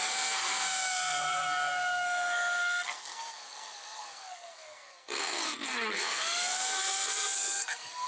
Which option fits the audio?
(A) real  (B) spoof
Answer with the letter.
B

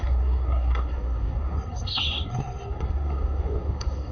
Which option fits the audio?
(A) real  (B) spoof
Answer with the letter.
B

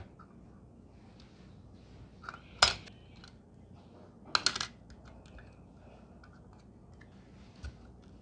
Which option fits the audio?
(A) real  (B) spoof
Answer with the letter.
A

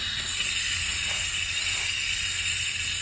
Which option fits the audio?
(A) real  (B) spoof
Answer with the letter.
A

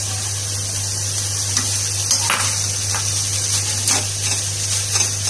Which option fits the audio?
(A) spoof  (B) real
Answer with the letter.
B